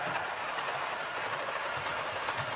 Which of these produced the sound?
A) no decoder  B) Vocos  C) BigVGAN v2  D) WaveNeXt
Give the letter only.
C